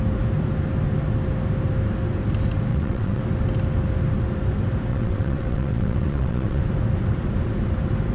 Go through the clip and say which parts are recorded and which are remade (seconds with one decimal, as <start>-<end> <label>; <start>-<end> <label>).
0.0-2.7 recorded; 2.7-3.2 remade; 3.2-4.9 recorded; 4.9-6.6 remade; 6.6-8.1 recorded